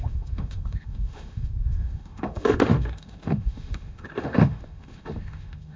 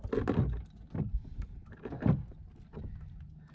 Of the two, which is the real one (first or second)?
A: second